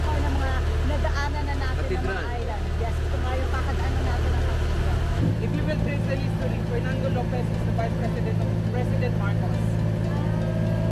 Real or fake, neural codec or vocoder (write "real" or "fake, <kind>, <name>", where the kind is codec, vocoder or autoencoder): real